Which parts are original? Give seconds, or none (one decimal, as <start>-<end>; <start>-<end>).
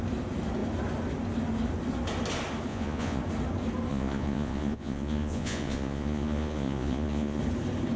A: 0.0-2.7; 3.2-3.9; 7.4-8.0